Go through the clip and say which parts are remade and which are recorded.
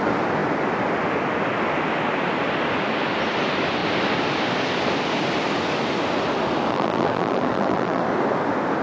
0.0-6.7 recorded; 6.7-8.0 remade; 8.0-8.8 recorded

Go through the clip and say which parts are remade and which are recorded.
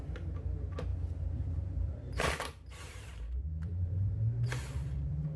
0.0-0.9 recorded; 0.9-4.1 remade; 4.1-5.4 recorded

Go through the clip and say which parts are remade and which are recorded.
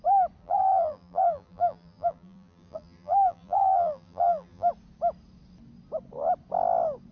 0.0-0.4 recorded; 0.4-4.7 remade; 4.7-7.1 recorded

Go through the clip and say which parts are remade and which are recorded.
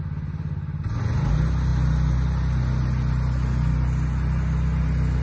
0.0-5.2 recorded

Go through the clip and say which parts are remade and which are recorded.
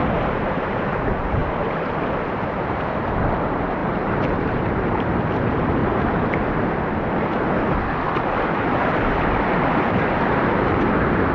0.0-1.4 remade; 1.4-3.1 recorded; 3.1-5.8 remade; 5.8-9.5 recorded; 9.5-11.3 remade